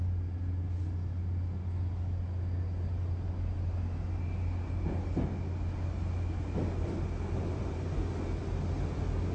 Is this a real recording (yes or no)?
yes